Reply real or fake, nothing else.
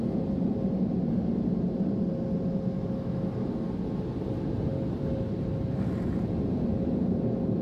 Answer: real